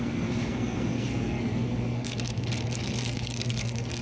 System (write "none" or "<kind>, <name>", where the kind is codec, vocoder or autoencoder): codec, SNAC